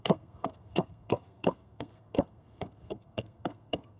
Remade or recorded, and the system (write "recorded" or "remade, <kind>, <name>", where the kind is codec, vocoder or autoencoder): remade, codec, SNAC